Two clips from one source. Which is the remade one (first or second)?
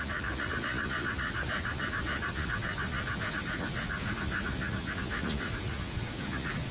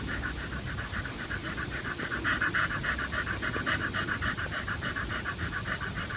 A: first